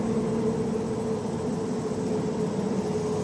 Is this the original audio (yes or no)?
yes